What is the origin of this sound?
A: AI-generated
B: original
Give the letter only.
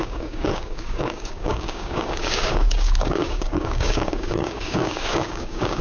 A